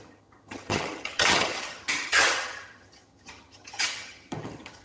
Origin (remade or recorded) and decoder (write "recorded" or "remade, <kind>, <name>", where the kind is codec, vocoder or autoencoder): remade, vocoder, HiFi-GAN